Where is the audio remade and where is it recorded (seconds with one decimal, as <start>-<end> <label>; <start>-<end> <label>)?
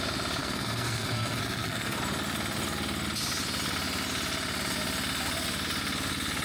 0.0-0.4 recorded; 0.4-2.0 remade; 2.0-6.4 recorded